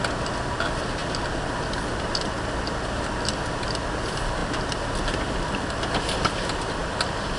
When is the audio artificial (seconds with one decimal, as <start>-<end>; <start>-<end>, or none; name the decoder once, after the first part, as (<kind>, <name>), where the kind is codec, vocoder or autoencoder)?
none